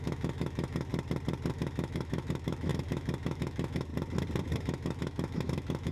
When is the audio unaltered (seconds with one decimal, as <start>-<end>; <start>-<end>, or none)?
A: 0.9-1.5; 3.9-4.6